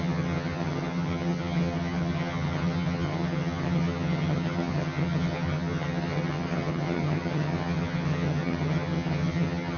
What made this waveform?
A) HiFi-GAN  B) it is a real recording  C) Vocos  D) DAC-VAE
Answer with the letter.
A